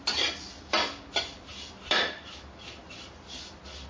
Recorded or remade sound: recorded